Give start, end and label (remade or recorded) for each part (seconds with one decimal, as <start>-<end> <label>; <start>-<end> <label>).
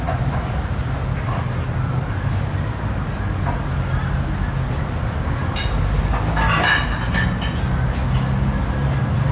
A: 0.0-9.3 recorded